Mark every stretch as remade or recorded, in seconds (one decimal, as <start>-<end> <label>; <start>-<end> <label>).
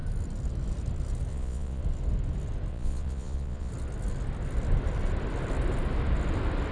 0.0-1.3 recorded; 1.3-1.8 remade; 1.8-2.7 recorded; 2.7-3.7 remade; 3.7-6.7 recorded